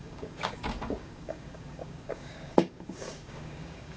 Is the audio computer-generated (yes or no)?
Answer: yes